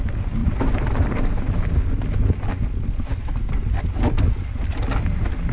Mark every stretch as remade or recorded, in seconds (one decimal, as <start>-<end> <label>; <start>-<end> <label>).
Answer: 0.0-5.5 recorded